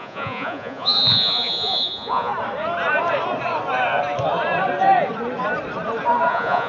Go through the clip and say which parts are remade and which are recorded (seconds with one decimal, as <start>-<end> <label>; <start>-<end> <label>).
0.0-2.3 remade; 2.3-6.3 recorded; 6.3-6.7 remade

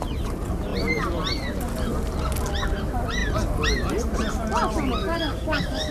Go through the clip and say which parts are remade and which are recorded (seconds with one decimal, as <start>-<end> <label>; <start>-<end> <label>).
0.0-5.0 recorded; 5.0-5.9 remade

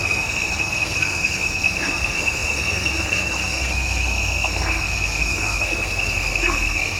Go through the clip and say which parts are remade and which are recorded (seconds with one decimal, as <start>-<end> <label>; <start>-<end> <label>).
0.0-7.0 remade

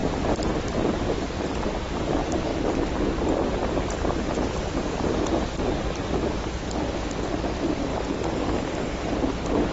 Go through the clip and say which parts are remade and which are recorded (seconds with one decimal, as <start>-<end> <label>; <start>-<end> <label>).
0.0-7.9 recorded; 7.9-9.0 remade; 9.0-9.7 recorded

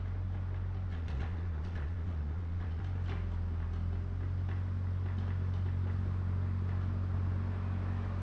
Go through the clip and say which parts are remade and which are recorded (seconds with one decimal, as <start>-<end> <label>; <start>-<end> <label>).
0.0-0.9 recorded; 0.9-2.8 remade; 2.8-8.2 recorded